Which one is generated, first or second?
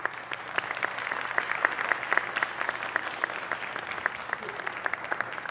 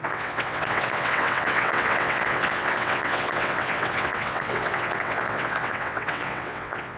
second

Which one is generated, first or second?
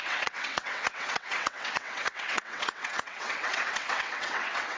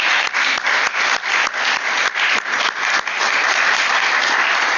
first